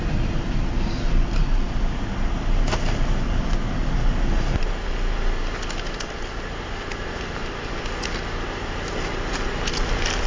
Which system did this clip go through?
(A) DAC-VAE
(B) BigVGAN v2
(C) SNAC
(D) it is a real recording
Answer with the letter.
D